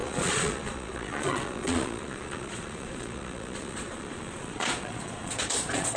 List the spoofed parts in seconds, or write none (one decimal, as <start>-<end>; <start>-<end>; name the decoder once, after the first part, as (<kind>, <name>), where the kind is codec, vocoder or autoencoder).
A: 0.0-6.0 (vocoder, Vocos)